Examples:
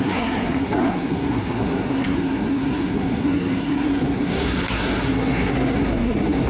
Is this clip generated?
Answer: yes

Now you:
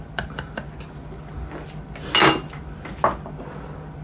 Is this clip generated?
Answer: no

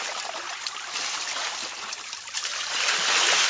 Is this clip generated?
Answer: no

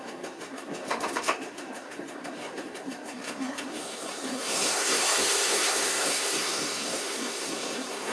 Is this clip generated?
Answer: yes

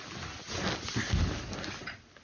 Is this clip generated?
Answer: no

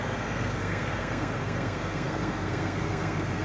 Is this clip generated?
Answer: yes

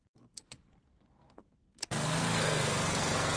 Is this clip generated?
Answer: yes